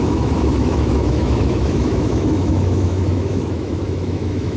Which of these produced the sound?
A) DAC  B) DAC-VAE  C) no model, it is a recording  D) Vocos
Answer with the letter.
B